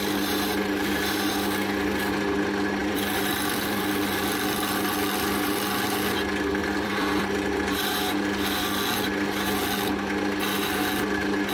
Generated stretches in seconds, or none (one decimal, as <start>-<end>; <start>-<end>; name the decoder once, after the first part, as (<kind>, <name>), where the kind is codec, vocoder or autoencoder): 2.8-3.8 (vocoder, BigVGAN v2); 6.6-7.8